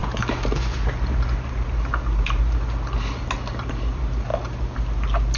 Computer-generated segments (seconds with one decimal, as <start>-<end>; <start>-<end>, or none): none

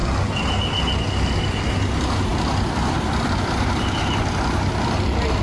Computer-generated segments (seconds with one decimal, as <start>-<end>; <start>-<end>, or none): 2.3-4.2

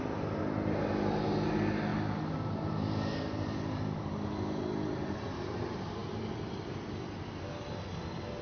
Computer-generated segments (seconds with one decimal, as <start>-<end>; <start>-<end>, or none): none

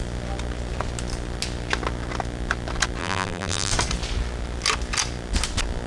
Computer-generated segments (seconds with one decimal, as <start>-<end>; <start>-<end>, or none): 3.0-3.7